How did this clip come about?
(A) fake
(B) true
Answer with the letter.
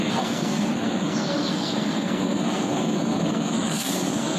A